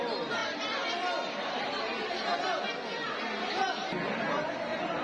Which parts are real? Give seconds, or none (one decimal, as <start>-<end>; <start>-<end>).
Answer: 0.0-5.0